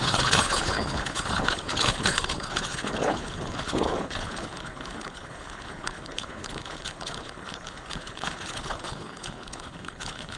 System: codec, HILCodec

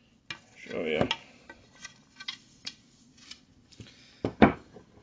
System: none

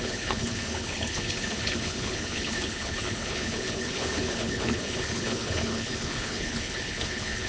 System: codec, HILCodec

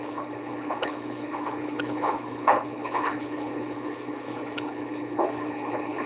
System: codec, HILCodec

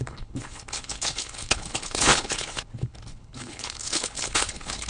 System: codec, HILCodec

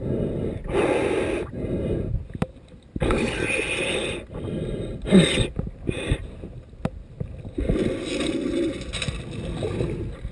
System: none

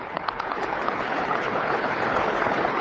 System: codec, HILCodec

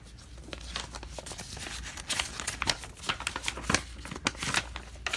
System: none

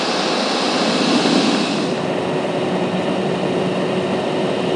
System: none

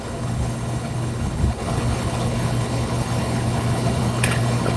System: codec, HILCodec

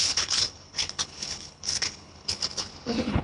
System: codec, HILCodec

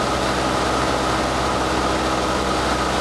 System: none